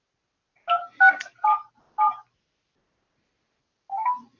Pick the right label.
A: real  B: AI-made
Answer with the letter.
A